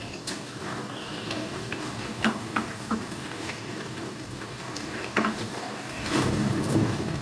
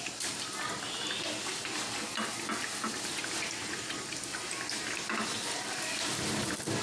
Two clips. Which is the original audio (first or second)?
second